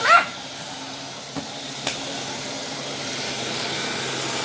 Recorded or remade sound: remade